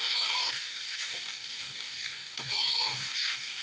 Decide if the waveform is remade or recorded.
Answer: remade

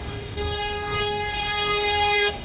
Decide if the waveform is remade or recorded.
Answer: remade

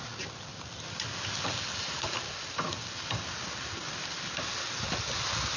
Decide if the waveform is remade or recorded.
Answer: recorded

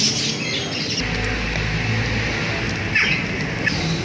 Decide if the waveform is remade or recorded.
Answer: recorded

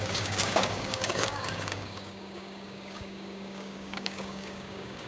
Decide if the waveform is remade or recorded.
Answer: remade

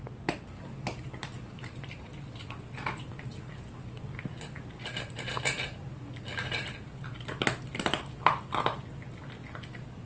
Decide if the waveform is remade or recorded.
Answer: recorded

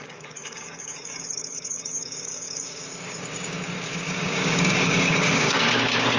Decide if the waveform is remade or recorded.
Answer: remade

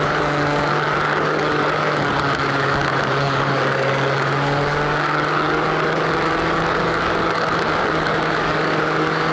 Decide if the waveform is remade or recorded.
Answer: remade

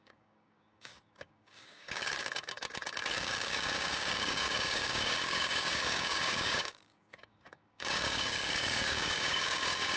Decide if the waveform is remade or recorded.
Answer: remade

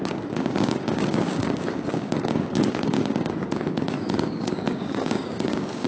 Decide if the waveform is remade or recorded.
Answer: remade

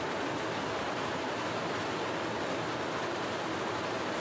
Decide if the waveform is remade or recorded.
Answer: recorded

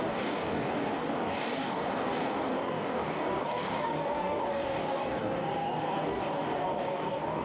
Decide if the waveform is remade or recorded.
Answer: remade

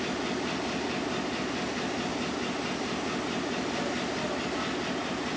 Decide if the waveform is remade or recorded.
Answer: recorded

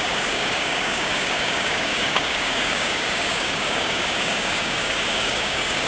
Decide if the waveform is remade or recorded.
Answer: remade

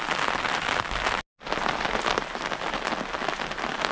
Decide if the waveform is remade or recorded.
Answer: recorded